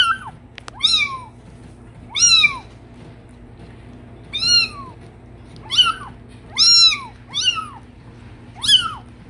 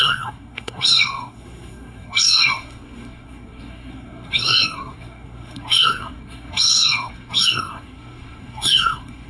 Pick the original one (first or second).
first